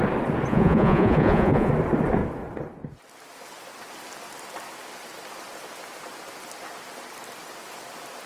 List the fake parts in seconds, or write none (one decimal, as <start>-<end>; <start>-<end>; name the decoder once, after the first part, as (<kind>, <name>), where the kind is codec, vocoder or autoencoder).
0.5-1.7 (vocoder, Vocos)